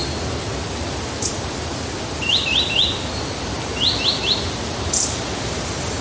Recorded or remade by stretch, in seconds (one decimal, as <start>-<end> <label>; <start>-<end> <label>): 0.0-6.0 recorded